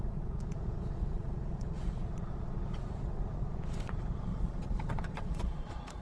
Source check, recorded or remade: remade